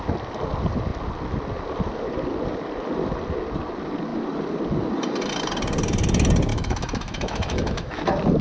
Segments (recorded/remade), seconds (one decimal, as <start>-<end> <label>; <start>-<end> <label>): 0.0-6.5 recorded; 6.5-8.0 remade; 8.0-8.4 recorded

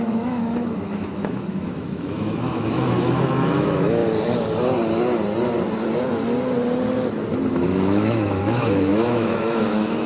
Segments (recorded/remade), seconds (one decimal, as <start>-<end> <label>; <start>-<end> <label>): 0.0-4.0 remade; 4.0-7.5 recorded; 7.5-10.1 remade